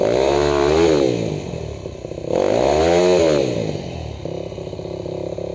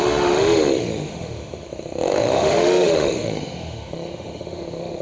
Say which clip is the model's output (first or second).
second